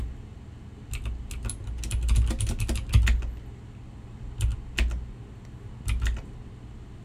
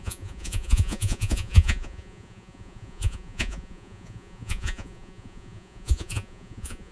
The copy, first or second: second